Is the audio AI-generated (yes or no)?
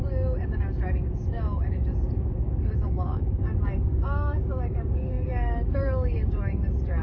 yes